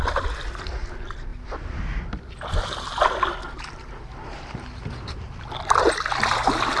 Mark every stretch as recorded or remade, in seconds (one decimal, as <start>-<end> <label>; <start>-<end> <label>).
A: 0.0-6.8 recorded